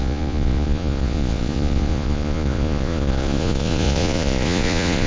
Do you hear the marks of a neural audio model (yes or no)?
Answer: yes